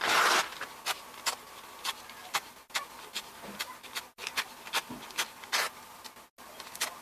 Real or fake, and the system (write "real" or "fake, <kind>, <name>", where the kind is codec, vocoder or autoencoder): real